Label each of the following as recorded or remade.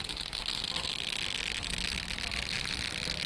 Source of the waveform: remade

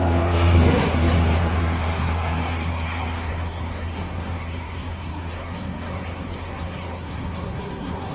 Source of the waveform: remade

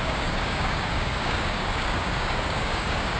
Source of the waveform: remade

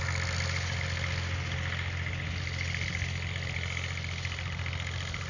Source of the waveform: recorded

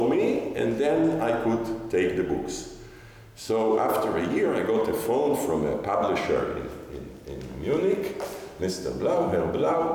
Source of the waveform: recorded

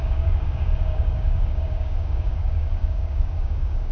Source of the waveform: remade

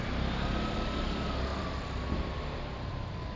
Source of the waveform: recorded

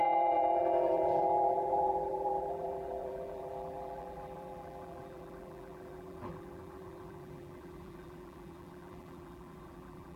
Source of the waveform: remade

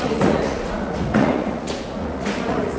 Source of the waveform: remade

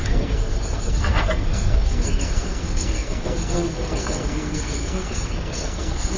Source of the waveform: remade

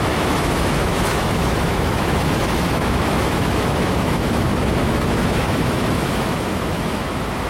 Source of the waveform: remade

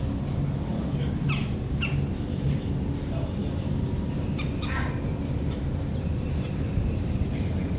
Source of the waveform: recorded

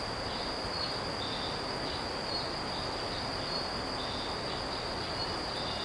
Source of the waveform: recorded